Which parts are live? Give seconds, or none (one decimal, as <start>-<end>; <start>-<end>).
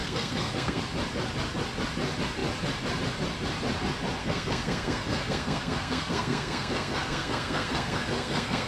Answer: 0.8-4.2